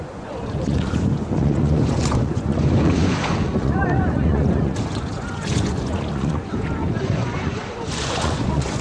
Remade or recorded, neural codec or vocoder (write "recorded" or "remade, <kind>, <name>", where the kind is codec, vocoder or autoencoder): remade, vocoder, Vocos